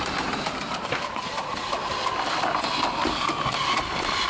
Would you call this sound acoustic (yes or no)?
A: no